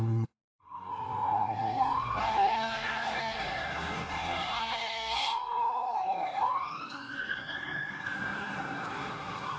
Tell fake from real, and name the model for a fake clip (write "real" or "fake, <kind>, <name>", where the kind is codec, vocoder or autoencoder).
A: fake, codec, SNAC